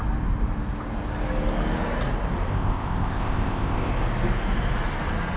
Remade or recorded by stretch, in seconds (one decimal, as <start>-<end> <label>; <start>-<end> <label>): 0.0-2.5 recorded; 2.5-3.9 remade; 3.9-5.4 recorded